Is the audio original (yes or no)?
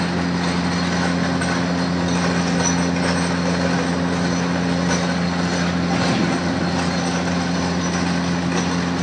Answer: yes